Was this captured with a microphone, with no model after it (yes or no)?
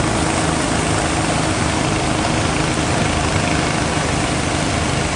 yes